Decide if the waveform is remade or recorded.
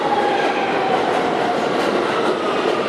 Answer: remade